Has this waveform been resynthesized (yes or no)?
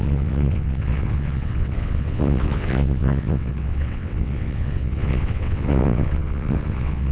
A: yes